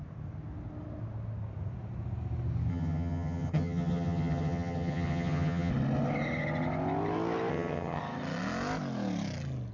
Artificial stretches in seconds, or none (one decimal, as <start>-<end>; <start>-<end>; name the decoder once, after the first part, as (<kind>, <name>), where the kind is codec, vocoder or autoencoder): 2.7-5.7 (vocoder, HiFi-GAN); 7.5-8.0